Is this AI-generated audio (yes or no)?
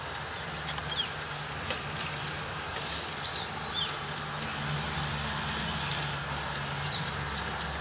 no